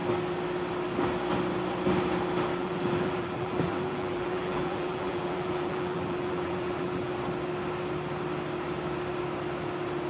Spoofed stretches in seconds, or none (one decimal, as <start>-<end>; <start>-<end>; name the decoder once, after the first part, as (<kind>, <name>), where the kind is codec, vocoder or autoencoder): 2.5-7.1 (vocoder, BigVGAN v2)